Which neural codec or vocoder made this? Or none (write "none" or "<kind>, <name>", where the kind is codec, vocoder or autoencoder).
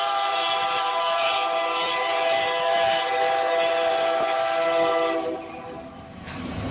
vocoder, BigVGAN v2